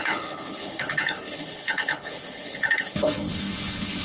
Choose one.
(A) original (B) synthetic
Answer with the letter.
B